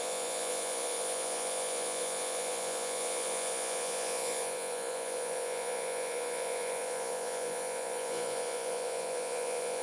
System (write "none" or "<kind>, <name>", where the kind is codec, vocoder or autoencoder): vocoder, Vocos